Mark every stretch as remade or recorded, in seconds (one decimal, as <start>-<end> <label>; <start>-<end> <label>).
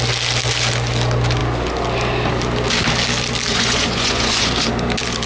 0.0-3.5 recorded; 3.5-4.5 remade; 4.5-5.3 recorded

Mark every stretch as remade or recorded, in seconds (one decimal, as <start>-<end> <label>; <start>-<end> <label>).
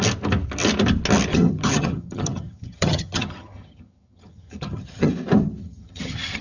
0.0-1.3 recorded; 1.3-5.1 remade; 5.1-5.6 recorded; 5.6-6.4 remade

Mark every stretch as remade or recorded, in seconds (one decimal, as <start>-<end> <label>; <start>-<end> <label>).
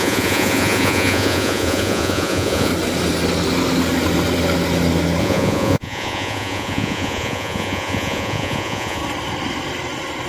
0.0-2.7 remade; 2.7-5.2 recorded; 5.2-9.0 remade; 9.0-10.3 recorded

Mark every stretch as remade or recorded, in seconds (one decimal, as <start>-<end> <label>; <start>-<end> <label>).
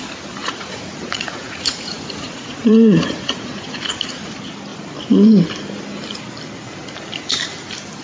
0.0-0.4 recorded; 0.4-3.9 remade; 3.9-8.0 recorded